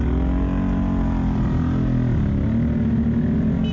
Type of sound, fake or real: real